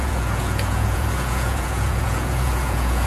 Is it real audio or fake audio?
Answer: fake